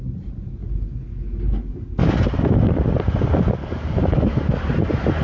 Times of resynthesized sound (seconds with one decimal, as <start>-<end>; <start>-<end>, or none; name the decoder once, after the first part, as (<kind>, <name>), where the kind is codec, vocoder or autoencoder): 0.6-2.2 (codec, DAC); 3.6-4.6